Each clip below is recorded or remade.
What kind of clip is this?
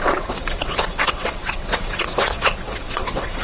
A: remade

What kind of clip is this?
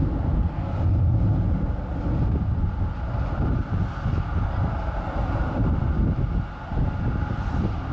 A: recorded